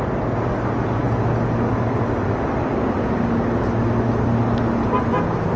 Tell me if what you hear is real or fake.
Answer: real